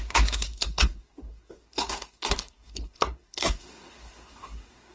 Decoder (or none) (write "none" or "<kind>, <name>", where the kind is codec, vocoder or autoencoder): codec, SNAC